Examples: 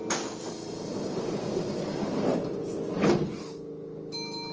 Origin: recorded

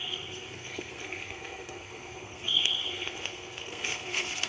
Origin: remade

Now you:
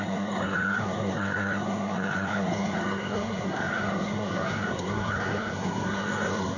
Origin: remade